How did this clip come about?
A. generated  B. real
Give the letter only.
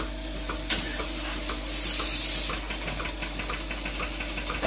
B